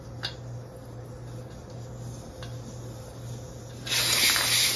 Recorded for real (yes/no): yes